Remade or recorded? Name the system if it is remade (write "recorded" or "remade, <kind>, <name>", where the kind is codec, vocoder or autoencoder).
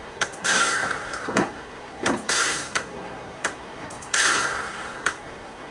remade, codec, SNAC